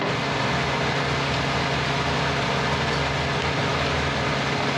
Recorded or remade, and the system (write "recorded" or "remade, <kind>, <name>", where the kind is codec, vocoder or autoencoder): recorded